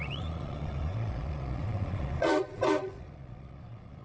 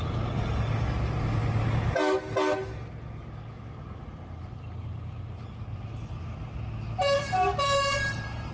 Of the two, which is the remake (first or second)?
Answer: first